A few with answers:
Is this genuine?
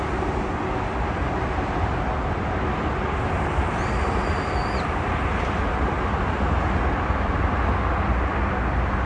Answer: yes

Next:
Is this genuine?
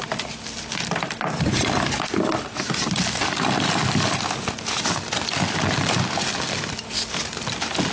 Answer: yes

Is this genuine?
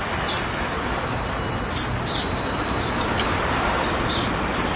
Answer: yes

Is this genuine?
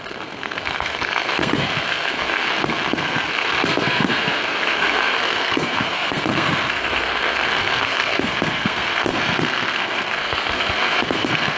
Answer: no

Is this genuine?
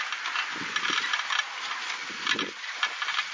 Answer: yes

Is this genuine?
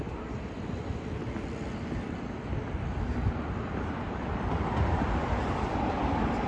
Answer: yes